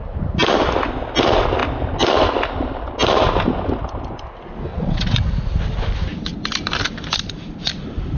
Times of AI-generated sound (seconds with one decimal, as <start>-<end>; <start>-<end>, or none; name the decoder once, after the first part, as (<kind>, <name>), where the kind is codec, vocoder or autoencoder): 4.7-5.3 (vocoder, WaveNeXt)